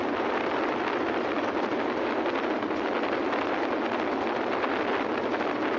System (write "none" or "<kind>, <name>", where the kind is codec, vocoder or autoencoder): none